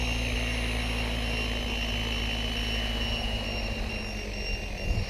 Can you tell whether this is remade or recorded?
recorded